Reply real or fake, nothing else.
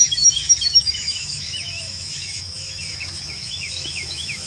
fake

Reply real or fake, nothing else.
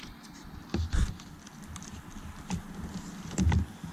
real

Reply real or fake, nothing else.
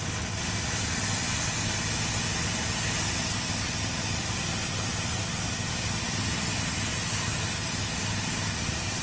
real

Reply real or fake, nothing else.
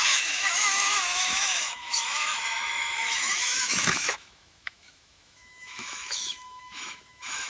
fake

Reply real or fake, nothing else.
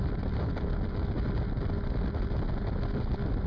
real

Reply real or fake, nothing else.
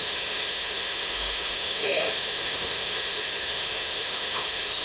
fake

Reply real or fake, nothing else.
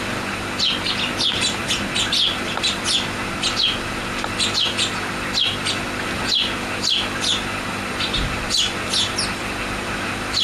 real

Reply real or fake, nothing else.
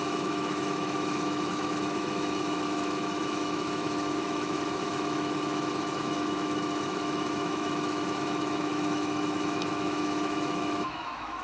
fake